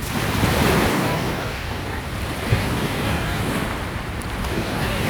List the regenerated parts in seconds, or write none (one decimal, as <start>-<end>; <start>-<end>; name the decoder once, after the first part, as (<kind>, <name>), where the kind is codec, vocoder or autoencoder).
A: 0.9-2.0 (codec, DAC); 2.5-3.4; 4.4-5.1